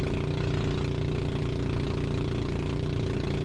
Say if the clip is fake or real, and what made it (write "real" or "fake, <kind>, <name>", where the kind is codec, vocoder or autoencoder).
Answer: real